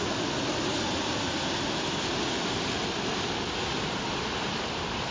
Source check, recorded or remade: recorded